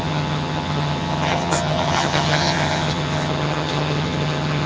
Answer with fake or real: fake